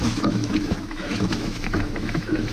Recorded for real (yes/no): no